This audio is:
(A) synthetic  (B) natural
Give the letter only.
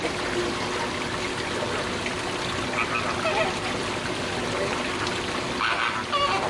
B